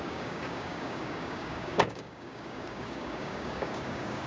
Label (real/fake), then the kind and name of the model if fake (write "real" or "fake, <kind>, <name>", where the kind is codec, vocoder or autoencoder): fake, codec, DAC